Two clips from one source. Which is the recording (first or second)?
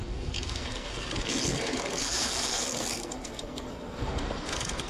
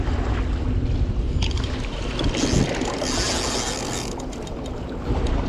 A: second